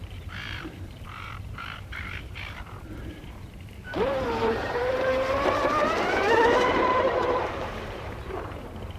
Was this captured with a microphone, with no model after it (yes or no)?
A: no